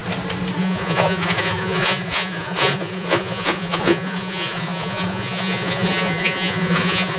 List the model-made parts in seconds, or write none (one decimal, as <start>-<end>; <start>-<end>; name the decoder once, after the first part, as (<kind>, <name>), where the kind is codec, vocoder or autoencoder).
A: 0.6-7.2 (vocoder, Vocos)